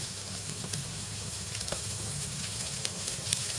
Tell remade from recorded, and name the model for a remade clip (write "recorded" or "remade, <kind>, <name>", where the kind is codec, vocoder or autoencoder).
remade, codec, SNAC